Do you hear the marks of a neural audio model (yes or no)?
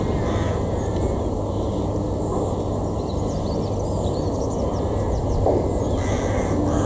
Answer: no